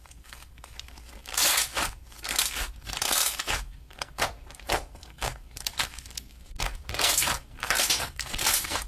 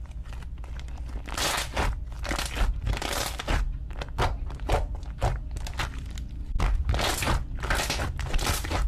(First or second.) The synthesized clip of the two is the first